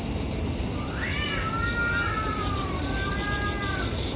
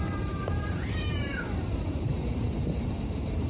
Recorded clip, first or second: first